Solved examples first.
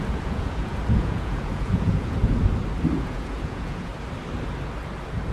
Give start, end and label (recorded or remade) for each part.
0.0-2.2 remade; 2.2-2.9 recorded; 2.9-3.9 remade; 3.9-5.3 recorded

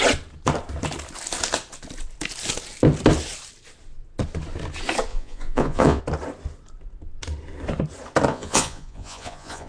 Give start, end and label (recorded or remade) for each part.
0.0-5.1 recorded; 5.1-6.0 remade; 6.0-8.3 recorded; 8.3-9.7 remade

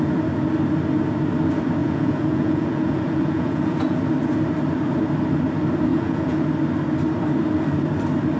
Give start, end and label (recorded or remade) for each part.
0.0-1.8 recorded; 1.8-4.0 remade; 4.0-5.9 recorded; 5.9-6.4 remade; 6.4-8.4 recorded

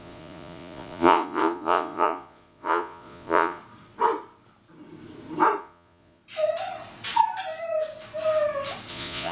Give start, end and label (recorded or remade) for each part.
0.0-3.6 remade; 3.6-5.6 recorded; 5.6-6.2 remade; 6.2-8.9 recorded; 8.9-9.3 remade

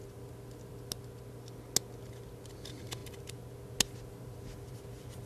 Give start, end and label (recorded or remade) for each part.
0.0-5.3 recorded

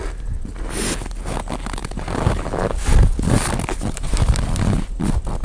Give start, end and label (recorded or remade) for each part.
0.0-5.4 recorded

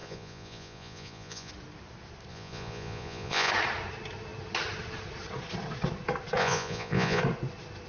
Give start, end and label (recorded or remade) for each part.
0.0-1.5 remade; 1.5-2.3 recorded; 2.3-3.5 remade; 3.5-6.4 recorded; 6.4-7.2 remade; 7.2-7.9 recorded